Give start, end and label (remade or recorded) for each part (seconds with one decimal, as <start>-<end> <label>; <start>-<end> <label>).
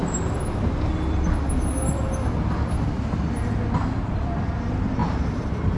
0.0-5.0 recorded; 5.0-5.8 remade